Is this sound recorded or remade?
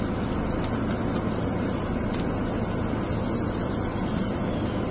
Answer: recorded